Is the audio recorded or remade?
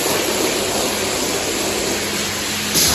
recorded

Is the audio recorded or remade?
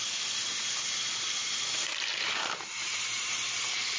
remade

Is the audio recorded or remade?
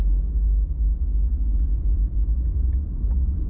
recorded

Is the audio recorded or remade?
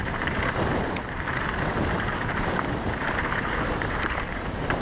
remade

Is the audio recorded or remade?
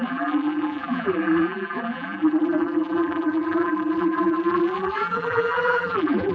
remade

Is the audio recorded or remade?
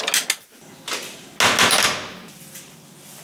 recorded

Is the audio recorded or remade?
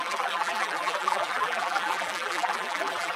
remade